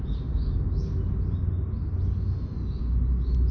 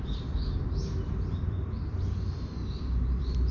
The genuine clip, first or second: first